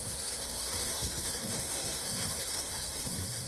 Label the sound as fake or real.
fake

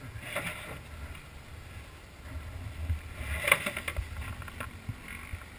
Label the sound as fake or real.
real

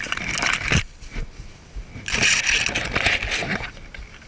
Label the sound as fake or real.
real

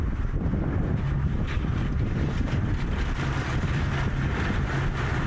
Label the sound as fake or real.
real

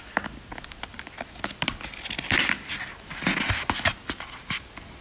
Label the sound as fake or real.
real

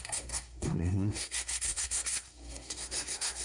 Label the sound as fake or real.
fake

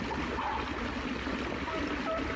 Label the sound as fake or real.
real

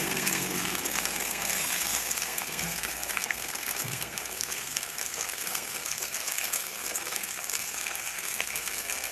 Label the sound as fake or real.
fake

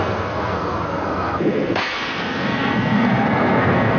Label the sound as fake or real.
fake